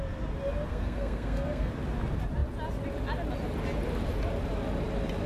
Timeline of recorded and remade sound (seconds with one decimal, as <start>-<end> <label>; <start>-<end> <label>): 0.0-0.7 recorded; 0.7-1.7 remade; 1.7-5.3 recorded